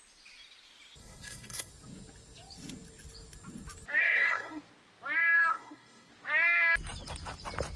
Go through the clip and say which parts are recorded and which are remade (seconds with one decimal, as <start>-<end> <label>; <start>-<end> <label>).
0.0-1.0 recorded; 1.0-1.7 remade; 1.7-4.0 recorded; 4.0-4.6 remade; 4.6-5.5 recorded; 5.5-6.1 remade; 6.1-7.8 recorded